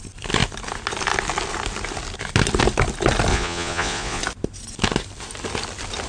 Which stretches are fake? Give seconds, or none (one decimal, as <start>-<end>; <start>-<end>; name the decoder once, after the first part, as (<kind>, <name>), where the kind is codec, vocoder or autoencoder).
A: 3.3-4.2 (vocoder, Vocos)